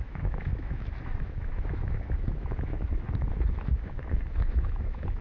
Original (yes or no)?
no